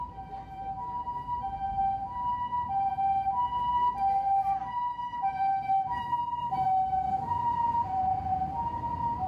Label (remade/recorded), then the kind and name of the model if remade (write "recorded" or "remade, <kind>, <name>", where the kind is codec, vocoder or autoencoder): recorded